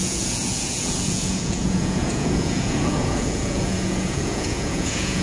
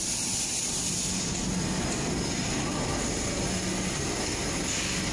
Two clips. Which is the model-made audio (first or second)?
first